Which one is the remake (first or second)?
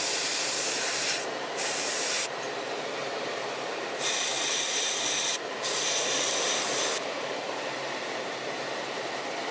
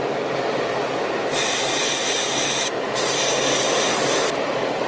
first